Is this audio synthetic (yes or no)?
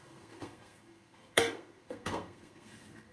yes